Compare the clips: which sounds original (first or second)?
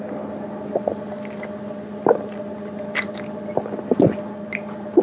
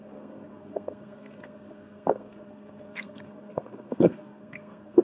first